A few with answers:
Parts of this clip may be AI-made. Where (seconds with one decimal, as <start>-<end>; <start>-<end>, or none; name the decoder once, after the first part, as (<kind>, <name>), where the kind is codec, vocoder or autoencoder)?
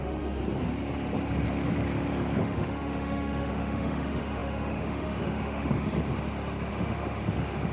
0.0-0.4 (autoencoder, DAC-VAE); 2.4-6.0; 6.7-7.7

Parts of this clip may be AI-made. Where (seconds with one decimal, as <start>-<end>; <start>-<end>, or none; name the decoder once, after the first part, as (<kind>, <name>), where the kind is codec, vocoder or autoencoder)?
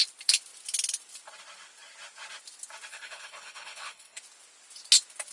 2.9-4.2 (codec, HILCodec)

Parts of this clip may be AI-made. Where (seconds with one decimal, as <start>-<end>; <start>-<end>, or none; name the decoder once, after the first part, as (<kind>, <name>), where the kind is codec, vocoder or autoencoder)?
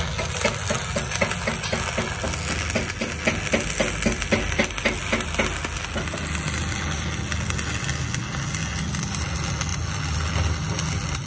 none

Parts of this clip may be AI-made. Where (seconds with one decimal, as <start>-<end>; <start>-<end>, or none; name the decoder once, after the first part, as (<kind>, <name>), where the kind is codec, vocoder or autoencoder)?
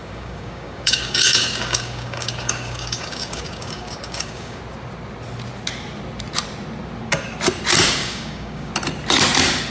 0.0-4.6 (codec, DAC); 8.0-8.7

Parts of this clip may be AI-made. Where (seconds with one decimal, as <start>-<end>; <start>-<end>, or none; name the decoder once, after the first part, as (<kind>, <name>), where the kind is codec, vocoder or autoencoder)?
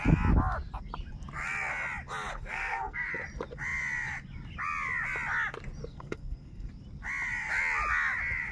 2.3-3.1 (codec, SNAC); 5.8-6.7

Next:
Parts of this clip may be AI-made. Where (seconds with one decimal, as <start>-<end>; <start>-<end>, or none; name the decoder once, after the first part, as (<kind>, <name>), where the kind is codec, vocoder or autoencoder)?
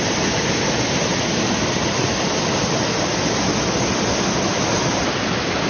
none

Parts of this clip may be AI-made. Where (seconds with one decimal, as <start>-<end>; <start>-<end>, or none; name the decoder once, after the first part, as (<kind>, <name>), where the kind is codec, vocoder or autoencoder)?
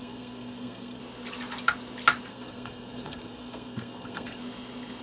0.0-1.0 (codec, SNAC); 2.3-4.4